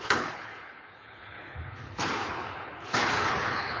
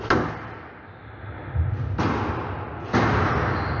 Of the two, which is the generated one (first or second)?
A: first